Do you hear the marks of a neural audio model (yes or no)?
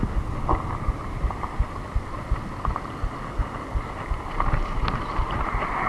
no